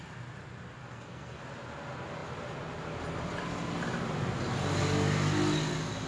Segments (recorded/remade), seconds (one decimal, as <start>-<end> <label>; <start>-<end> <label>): 0.0-0.8 recorded; 0.8-1.4 remade; 1.4-6.1 recorded